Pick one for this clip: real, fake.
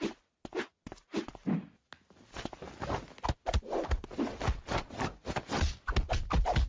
real